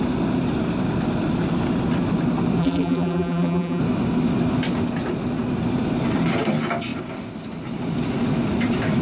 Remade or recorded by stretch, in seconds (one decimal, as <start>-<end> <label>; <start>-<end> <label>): 0.0-2.6 recorded; 2.6-3.8 remade; 3.8-9.0 recorded